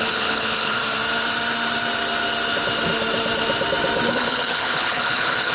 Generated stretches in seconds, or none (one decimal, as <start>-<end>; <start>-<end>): 0.0-0.8; 4.1-5.5